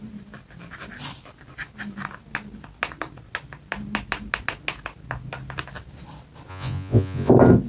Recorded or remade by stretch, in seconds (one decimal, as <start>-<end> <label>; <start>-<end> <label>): 0.0-6.5 recorded; 6.5-7.3 remade; 7.3-7.7 recorded